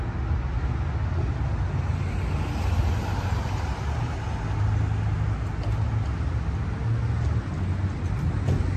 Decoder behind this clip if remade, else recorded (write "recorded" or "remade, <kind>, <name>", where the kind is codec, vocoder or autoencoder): recorded